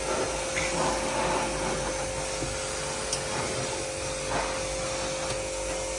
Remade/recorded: recorded